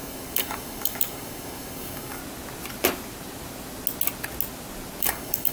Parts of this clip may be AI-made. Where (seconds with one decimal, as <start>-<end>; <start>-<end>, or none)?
0.0-2.2; 5.0-5.5

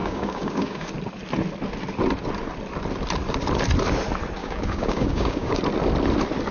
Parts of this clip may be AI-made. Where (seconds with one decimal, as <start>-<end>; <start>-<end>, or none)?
0.0-0.9; 4.4-5.6

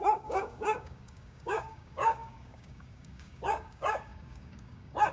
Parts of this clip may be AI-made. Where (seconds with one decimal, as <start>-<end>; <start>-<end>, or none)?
0.0-5.1

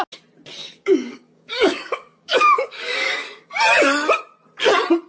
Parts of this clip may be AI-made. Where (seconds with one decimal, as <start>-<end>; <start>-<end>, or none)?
0.6-3.5

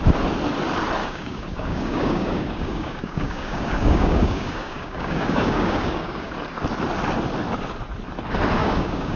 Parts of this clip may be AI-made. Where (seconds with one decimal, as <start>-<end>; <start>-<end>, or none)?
1.0-6.3; 8.6-9.2

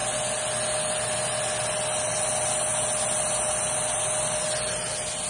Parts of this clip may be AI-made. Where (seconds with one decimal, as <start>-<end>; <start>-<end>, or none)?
none

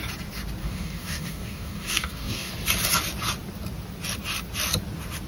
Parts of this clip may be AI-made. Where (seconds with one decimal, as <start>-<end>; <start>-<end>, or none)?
0.6-2.5

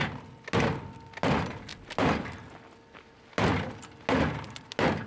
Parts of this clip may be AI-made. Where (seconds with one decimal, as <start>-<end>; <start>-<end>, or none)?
none